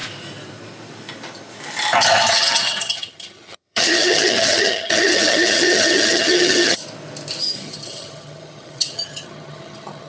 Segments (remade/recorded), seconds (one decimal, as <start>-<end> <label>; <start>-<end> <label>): 0.0-2.3 recorded; 2.3-6.8 remade; 6.8-7.4 recorded; 7.4-10.1 remade